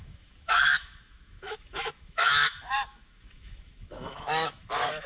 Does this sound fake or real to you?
fake